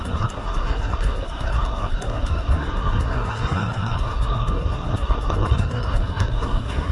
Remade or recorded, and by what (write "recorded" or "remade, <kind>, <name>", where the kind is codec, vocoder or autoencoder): remade, codec, SNAC